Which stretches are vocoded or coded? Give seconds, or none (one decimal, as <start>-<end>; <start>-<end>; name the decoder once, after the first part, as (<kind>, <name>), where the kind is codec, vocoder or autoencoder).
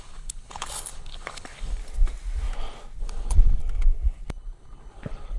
0.0-1.8 (codec, HILCodec); 3.0-3.6; 4.3-5.4